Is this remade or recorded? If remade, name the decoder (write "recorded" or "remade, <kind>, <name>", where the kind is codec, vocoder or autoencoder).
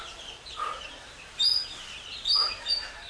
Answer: remade, vocoder, BigVGAN v2